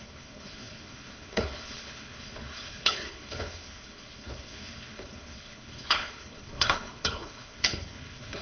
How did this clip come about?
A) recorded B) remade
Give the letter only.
B